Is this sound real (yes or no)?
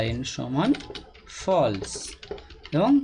yes